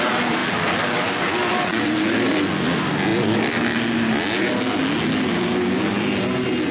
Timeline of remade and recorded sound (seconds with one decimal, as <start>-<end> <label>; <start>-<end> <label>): 0.0-6.7 recorded